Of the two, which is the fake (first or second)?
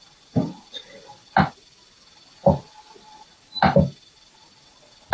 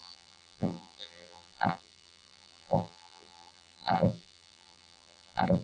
second